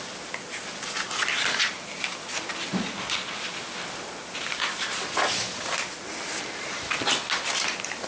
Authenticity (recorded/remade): recorded